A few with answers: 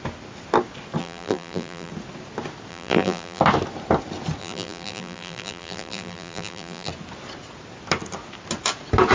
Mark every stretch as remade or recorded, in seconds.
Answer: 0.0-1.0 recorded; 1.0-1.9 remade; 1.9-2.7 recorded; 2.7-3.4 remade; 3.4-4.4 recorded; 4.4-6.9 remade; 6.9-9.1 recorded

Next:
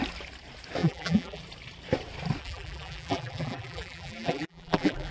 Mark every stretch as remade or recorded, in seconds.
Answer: 0.0-0.8 recorded; 0.8-1.4 remade; 1.4-2.4 recorded; 2.4-5.1 remade

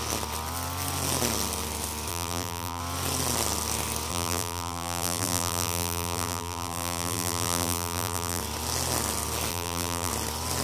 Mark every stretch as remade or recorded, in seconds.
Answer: 0.0-2.1 recorded; 2.1-2.8 remade; 2.8-4.1 recorded; 4.1-8.4 remade; 8.4-9.5 recorded; 9.5-10.1 remade; 10.1-10.6 recorded

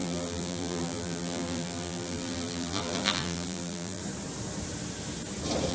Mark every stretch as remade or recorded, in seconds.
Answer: 0.0-4.0 remade; 4.0-5.7 recorded

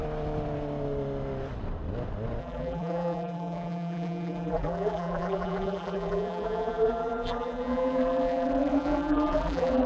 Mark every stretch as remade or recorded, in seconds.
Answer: 0.0-2.4 recorded; 2.4-9.9 remade

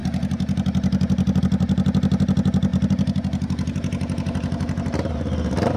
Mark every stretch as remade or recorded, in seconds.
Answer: 0.0-5.8 recorded

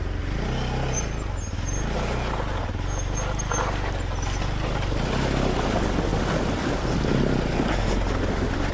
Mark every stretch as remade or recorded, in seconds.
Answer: 0.0-6.1 recorded; 6.1-6.9 remade; 6.9-8.7 recorded

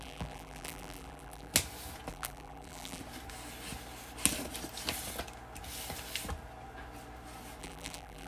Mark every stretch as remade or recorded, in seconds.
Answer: 0.0-1.5 remade; 1.5-2.1 recorded; 2.1-3.0 remade; 3.0-7.6 recorded; 7.6-8.3 remade